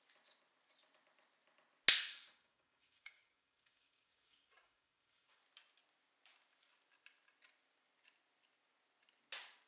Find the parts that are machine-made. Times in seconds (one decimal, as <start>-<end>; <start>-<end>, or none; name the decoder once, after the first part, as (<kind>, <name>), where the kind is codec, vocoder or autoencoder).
2.0-5.4 (codec, DAC)